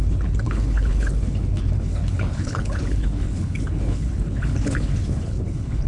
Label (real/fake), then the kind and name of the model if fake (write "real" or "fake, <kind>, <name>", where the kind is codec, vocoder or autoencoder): fake, codec, HILCodec